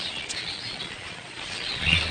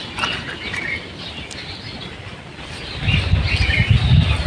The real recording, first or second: second